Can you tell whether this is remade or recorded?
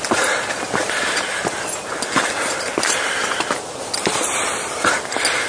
recorded